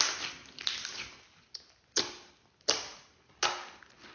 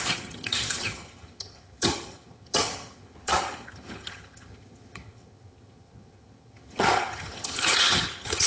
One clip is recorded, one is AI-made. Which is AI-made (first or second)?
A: second